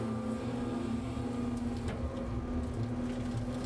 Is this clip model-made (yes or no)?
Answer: no